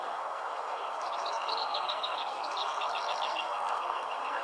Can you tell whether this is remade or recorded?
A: remade